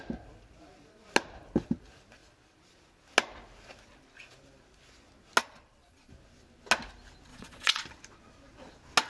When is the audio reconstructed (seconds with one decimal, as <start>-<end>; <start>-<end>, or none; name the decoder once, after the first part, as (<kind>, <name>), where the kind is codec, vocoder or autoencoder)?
5.4-6.1 (vocoder, Vocos); 7.3-7.8

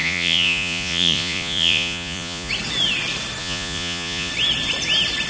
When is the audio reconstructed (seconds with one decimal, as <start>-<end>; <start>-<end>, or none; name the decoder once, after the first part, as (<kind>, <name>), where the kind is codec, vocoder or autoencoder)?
0.0-2.5 (vocoder, Vocos); 3.4-4.3

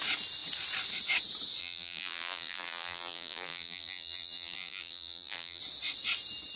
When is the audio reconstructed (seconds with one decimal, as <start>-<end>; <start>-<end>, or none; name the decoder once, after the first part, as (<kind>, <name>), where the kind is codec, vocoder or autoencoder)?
1.6-5.6 (vocoder, BigVGAN v2)

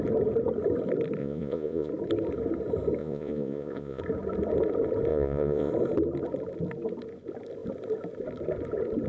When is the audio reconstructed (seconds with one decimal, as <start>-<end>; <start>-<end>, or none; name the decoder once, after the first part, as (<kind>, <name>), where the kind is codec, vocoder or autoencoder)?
1.2-1.9 (vocoder, Vocos); 3.0-4.0; 5.1-5.7

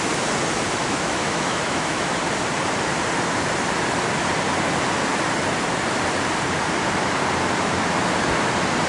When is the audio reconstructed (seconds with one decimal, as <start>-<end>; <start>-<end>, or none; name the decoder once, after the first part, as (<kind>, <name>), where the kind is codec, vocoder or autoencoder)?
0.8-2.1 (autoencoder, DAC-VAE)

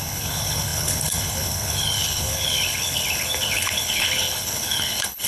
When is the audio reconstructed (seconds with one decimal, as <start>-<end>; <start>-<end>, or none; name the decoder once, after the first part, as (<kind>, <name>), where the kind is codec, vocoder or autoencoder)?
0.0-5.3 (codec, HILCodec)